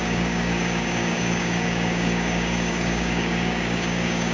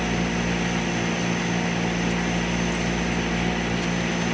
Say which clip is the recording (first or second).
second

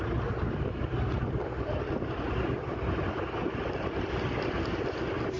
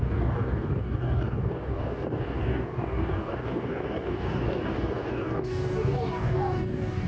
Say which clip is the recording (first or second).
first